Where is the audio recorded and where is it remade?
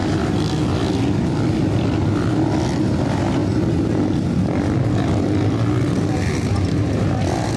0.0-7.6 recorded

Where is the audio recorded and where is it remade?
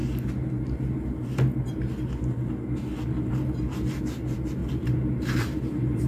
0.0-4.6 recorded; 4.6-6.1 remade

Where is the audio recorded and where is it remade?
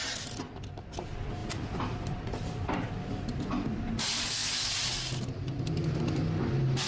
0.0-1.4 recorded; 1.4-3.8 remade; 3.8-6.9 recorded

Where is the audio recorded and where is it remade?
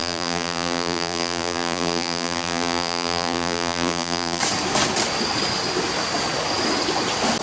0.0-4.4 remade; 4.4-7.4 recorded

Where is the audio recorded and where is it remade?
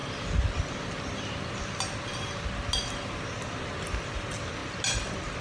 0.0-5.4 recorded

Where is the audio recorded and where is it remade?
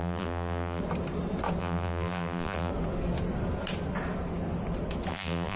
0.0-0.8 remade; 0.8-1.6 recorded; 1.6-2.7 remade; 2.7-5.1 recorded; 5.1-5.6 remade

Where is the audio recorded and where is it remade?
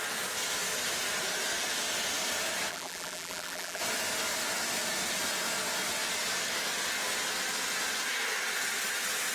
0.0-2.7 recorded; 2.7-3.8 remade; 3.8-9.3 recorded